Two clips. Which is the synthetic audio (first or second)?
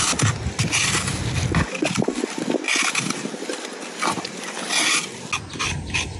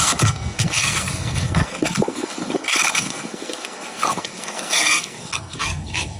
second